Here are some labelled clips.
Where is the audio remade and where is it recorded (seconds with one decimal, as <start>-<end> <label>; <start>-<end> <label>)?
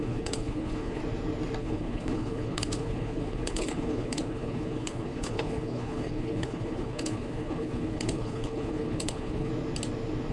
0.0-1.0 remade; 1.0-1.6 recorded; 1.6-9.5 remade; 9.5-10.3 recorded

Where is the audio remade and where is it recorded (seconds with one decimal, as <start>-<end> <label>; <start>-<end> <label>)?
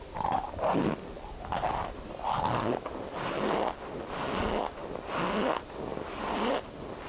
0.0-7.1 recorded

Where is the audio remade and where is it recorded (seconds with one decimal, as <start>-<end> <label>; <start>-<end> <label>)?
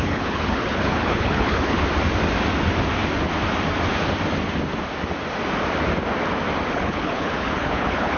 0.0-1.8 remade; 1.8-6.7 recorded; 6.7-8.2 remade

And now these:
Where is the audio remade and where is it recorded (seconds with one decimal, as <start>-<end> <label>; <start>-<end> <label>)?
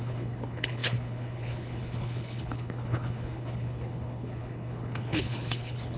0.0-6.0 remade